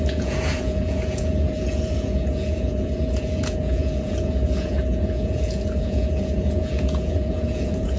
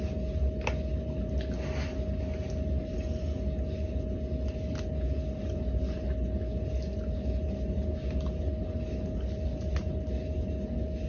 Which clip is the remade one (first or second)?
first